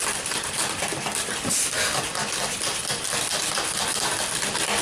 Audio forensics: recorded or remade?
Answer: recorded